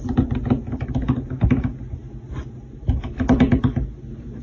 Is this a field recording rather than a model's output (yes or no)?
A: yes